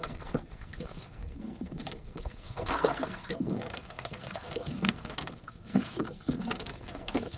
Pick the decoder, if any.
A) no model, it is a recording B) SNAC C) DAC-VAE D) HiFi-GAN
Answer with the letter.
B